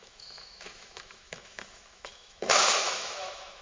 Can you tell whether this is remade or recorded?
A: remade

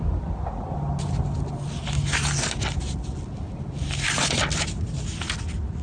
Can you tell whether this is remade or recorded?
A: recorded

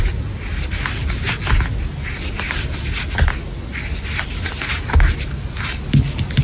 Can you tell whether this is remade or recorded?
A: recorded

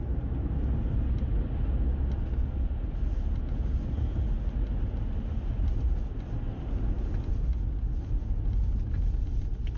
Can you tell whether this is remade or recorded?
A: recorded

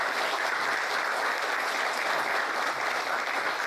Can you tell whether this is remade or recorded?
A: recorded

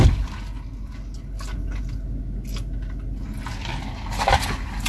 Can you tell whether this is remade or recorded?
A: recorded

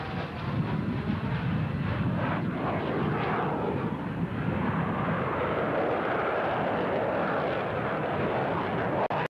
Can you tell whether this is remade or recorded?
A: recorded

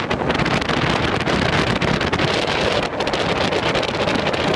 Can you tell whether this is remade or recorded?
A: recorded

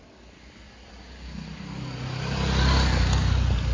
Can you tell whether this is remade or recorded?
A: recorded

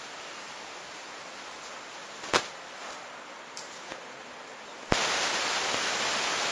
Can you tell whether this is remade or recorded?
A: recorded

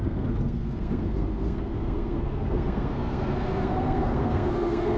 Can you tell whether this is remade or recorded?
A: remade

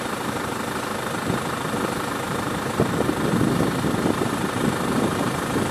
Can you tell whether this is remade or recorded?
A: remade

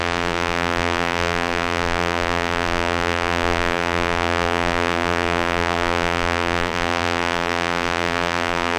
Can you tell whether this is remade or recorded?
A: remade